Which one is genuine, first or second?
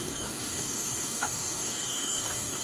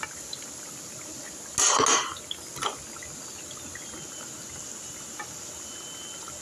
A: second